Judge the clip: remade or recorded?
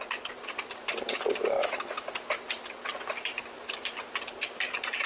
remade